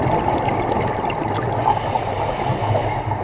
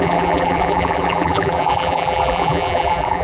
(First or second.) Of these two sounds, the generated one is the second